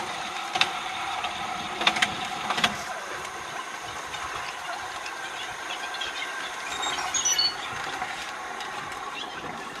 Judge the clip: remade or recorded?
remade